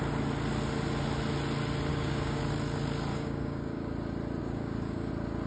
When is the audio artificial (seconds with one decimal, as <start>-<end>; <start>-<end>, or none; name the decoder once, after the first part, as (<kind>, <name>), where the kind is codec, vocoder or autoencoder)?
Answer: 1.9-2.4 (codec, DAC); 3.1-3.9; 4.4-5.1

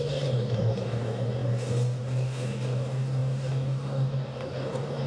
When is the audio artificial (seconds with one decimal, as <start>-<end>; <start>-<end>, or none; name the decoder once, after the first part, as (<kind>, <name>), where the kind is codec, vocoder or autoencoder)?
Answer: 0.0-5.1 (codec, DAC)

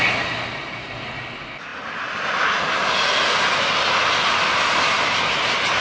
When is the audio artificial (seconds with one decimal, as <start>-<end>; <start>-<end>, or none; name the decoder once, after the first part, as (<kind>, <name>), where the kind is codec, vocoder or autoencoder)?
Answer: none

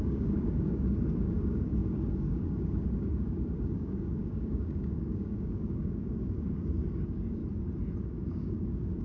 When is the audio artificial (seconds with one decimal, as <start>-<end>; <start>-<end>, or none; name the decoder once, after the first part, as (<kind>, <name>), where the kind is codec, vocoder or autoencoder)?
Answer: 0.0-7.4 (codec, DAC); 8.0-9.0

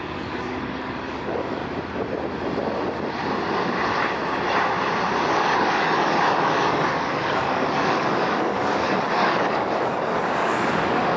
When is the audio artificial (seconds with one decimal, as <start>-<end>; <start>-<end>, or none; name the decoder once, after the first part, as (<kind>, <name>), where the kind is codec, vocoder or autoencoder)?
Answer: 0.0-1.6 (codec, DAC); 5.3-11.2

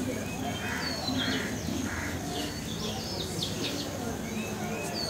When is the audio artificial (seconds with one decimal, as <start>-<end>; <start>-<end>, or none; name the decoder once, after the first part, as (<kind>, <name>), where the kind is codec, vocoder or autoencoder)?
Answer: 1.7-2.5 (codec, DAC); 3.4-4.1